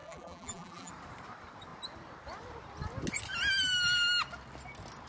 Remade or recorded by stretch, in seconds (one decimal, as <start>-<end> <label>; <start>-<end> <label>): 0.0-0.9 remade; 0.9-5.1 recorded